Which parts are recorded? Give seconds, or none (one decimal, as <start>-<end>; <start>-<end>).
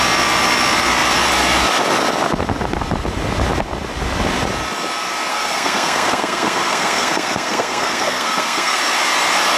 0.0-5.3; 8.8-9.6